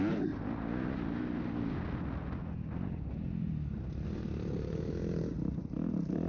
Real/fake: real